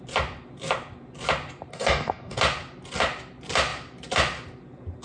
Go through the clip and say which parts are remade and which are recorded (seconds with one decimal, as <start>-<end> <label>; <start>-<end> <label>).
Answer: 0.0-1.7 recorded; 1.7-2.4 remade; 2.4-5.0 recorded